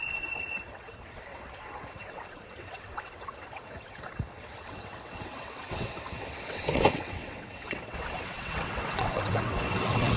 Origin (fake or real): fake